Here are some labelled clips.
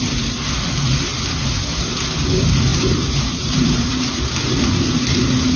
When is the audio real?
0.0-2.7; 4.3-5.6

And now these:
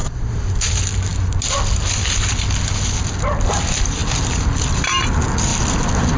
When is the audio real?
0.7-4.0; 5.0-5.5

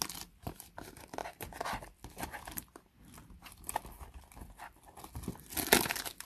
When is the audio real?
0.0-6.3